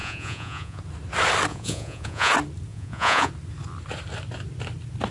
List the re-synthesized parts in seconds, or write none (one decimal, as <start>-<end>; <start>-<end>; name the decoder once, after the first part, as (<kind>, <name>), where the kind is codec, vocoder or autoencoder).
0.0-0.8 (vocoder, Vocos); 1.5-2.3; 2.7-3.3